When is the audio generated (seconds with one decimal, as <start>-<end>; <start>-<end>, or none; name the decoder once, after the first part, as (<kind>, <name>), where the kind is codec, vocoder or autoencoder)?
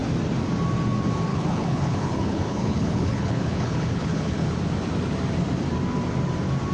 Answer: 1.3-4.5 (codec, HILCodec)